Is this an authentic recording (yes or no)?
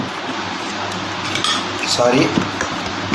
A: yes